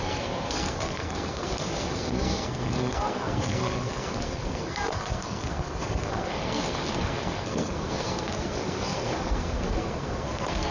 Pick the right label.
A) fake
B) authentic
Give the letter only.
A